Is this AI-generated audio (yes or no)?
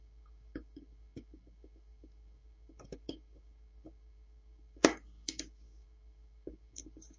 yes